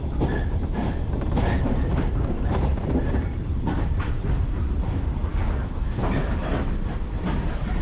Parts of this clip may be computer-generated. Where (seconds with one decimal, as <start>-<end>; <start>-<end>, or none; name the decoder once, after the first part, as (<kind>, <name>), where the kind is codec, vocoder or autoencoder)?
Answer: 0.0-5.3 (vocoder, BigVGAN v2); 5.8-7.8